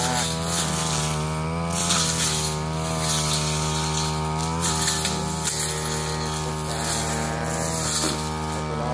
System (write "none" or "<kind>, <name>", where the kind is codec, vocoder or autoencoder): none